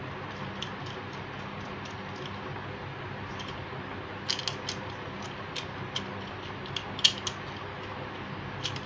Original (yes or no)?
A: yes